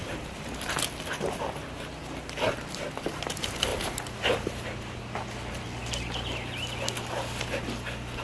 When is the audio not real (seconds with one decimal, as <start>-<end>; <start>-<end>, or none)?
none